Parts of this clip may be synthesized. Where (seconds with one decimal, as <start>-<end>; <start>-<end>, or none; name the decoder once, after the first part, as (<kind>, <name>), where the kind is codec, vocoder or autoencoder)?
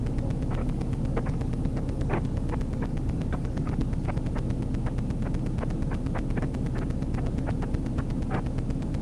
0.6-4.2 (codec, DAC)